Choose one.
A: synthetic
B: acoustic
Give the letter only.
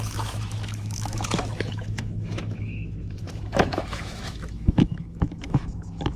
A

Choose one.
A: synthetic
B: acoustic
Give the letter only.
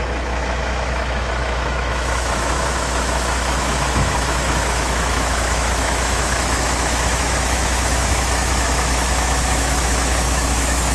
A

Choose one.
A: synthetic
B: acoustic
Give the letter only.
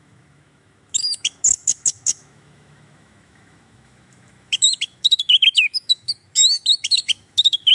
A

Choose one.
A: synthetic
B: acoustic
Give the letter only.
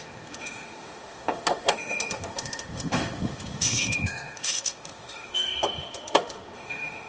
A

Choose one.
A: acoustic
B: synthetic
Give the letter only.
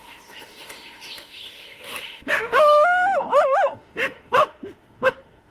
B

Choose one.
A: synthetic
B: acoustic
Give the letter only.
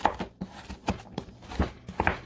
B